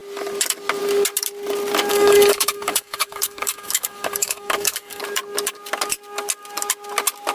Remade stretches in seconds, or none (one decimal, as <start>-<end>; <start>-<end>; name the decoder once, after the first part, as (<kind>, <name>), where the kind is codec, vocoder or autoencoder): 1.9-5.0 (codec, DAC)

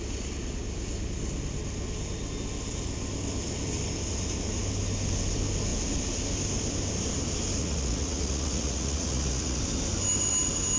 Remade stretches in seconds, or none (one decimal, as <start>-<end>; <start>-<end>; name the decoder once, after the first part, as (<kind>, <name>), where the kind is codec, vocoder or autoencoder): 7.6-9.6 (vocoder, Vocos)

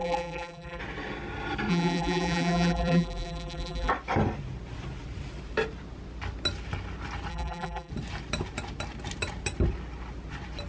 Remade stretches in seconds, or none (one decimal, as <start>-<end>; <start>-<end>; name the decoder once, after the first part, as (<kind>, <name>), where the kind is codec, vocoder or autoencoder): 0.0-0.8 (vocoder, BigVGAN v2); 1.7-3.9; 7.3-7.9

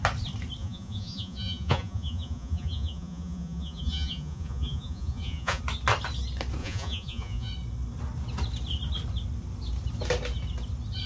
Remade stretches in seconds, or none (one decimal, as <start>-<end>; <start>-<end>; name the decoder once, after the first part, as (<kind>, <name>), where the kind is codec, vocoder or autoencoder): 0.6-5.6 (vocoder, Vocos); 6.6-7.5

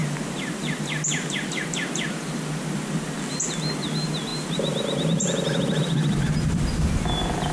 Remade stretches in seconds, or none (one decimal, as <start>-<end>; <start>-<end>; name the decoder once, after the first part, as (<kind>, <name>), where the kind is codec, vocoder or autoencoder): none